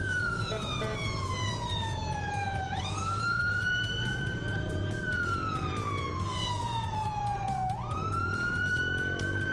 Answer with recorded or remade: remade